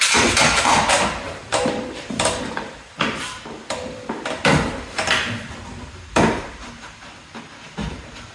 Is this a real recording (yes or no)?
no